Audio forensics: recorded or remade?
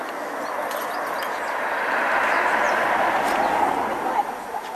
recorded